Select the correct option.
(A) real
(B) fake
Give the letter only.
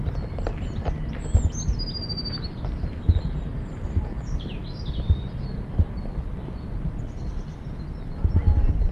A